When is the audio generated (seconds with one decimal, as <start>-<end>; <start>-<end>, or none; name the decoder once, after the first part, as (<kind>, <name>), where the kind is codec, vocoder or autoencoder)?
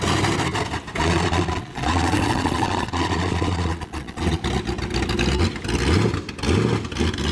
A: 1.0-4.4 (vocoder, Vocos)